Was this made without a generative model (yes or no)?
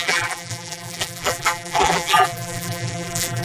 no